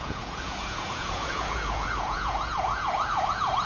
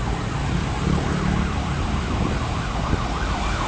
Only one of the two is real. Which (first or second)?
second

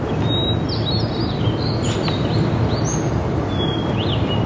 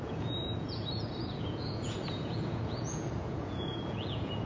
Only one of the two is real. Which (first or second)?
first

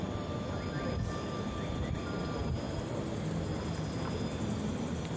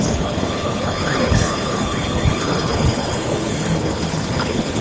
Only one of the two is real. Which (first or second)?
first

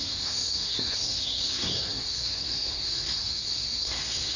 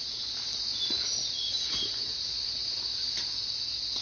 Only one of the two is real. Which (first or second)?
second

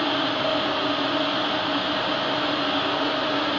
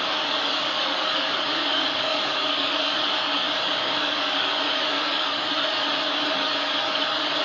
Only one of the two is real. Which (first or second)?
first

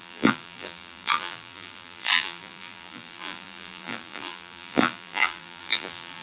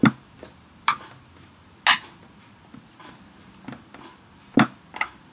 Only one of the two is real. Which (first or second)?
second